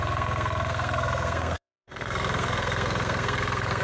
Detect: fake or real fake